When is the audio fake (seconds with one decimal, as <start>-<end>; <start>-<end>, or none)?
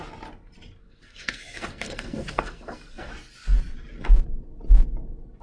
0.8-3.1